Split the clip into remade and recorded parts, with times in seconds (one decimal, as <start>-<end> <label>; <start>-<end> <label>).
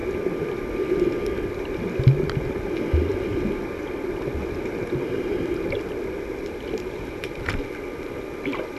0.0-8.8 recorded